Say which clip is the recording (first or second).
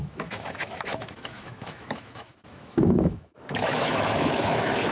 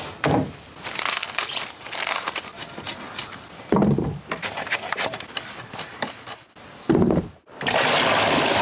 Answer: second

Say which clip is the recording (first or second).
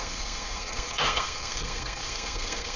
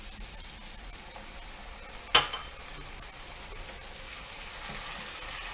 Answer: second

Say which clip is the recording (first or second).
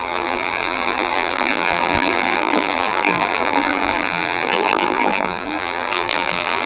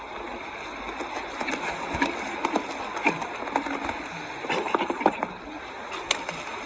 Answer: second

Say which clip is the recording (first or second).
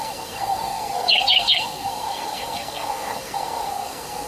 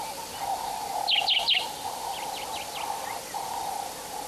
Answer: second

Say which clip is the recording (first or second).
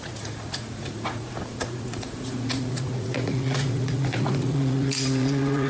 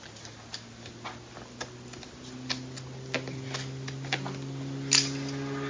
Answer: second